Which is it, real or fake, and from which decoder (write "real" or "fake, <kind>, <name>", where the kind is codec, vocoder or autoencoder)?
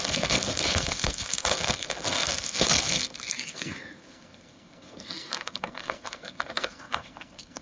fake, codec, SNAC